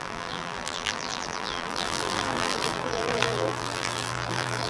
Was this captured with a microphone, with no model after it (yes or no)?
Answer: no